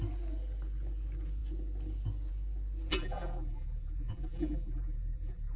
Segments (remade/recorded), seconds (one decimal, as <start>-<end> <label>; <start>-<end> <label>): 0.0-2.9 recorded; 2.9-5.6 remade